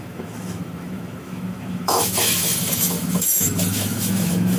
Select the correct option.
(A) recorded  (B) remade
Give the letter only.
B